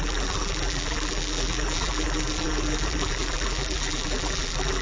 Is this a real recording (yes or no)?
no